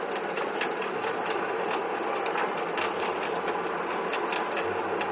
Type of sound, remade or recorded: recorded